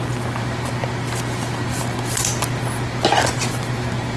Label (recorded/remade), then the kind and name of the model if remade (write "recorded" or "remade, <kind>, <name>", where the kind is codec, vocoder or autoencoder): recorded